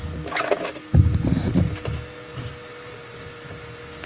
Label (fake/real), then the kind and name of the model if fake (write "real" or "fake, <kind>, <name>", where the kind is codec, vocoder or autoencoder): real